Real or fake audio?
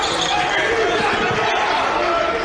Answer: real